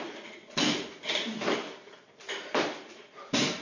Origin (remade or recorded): recorded